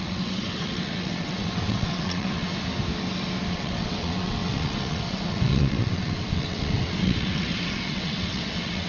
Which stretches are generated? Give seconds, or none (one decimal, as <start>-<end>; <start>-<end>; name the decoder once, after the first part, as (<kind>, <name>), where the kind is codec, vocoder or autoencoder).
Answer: 0.0-2.5 (vocoder, WaveNeXt); 3.5-8.9